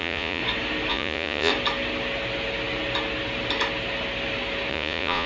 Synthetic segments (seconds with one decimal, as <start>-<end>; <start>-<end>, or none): 0.0-0.4; 0.9-1.5; 4.7-5.3